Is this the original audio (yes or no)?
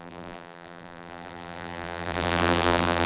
no